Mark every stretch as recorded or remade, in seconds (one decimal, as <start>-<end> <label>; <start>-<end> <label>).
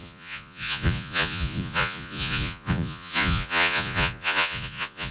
0.0-5.1 remade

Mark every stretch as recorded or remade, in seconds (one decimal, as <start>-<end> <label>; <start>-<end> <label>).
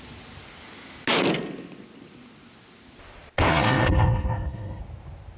0.0-3.5 recorded; 3.5-4.8 remade; 4.8-5.4 recorded